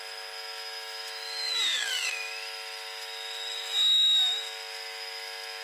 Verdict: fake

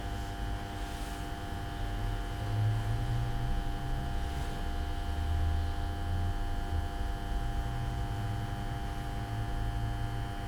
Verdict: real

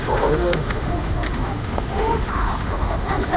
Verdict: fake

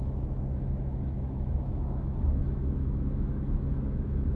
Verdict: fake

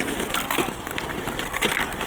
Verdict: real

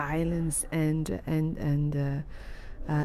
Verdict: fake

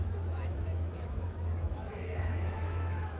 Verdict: fake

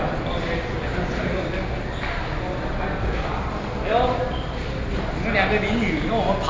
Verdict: real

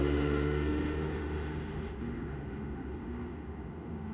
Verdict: fake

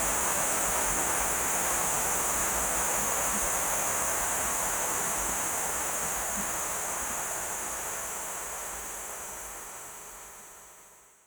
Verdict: fake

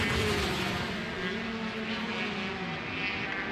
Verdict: real